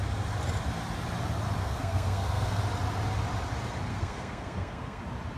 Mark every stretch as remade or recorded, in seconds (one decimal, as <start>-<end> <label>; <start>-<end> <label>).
0.0-1.6 recorded; 1.6-2.6 remade; 2.6-3.9 recorded; 3.9-5.0 remade; 5.0-5.4 recorded